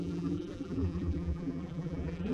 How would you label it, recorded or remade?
remade